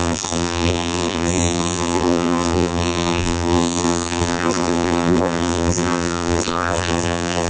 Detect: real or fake fake